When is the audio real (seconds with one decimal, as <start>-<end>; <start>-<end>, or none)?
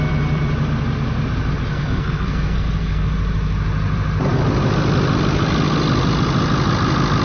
0.0-1.7; 3.1-7.2